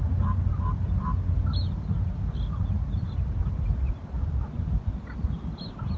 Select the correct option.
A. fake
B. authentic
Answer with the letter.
B